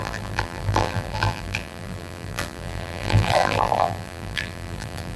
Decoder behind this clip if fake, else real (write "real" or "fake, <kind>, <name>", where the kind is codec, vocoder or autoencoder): fake, vocoder, BigVGAN v2